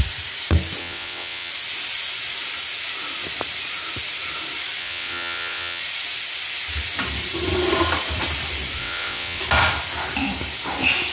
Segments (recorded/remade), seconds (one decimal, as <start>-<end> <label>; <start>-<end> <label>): 0.0-0.8 recorded; 0.8-1.5 remade; 1.5-4.8 recorded; 4.8-5.8 remade; 5.8-8.8 recorded; 8.8-9.4 remade; 9.4-11.1 recorded